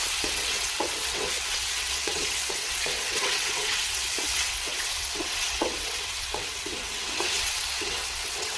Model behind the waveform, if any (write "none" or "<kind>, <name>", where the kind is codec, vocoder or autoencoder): vocoder, WaveNeXt